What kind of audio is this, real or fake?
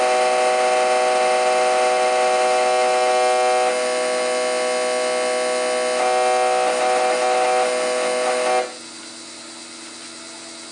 real